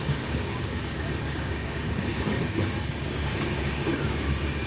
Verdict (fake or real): fake